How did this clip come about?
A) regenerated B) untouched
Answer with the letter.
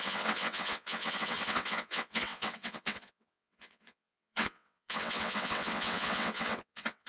A